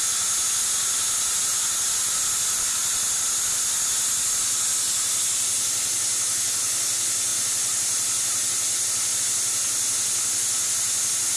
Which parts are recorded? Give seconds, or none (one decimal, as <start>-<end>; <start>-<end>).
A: 0.0-11.4